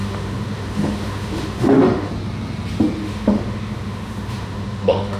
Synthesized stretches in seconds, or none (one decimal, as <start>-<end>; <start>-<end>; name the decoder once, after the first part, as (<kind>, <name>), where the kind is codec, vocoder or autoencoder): 0.0-2.1 (autoencoder, DAC-VAE); 3.0-5.2